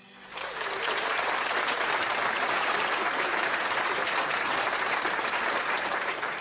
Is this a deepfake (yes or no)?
yes